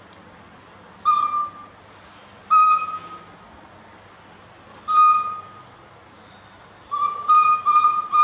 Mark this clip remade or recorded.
recorded